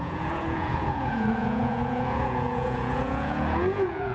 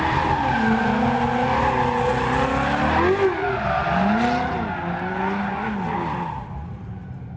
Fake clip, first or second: first